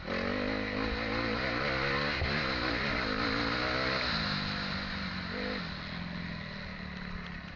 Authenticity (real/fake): real